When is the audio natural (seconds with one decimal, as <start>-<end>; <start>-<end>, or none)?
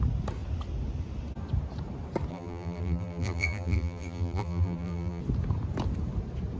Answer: 0.0-2.3; 5.2-6.6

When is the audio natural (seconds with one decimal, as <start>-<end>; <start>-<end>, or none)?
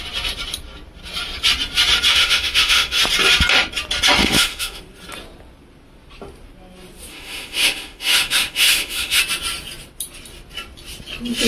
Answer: 0.0-2.1; 3.0-4.2; 4.8-7.1; 9.2-11.5